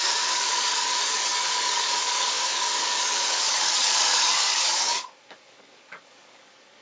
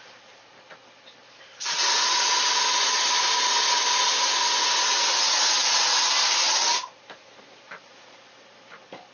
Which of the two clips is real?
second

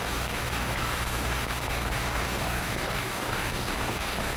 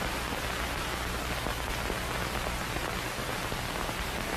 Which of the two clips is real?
second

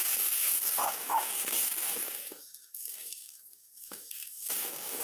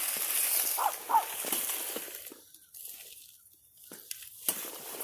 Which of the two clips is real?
second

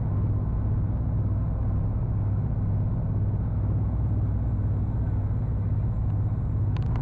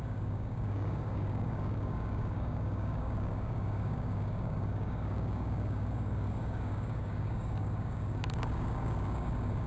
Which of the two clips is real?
first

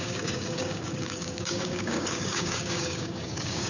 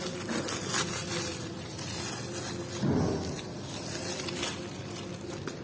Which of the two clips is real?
second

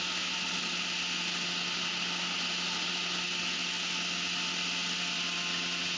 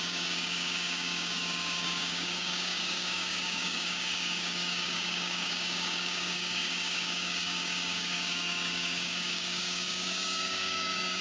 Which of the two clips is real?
first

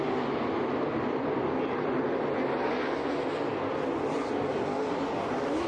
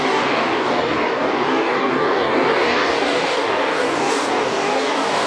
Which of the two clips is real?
first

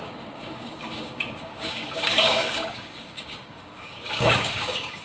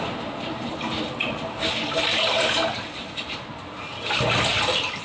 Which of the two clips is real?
second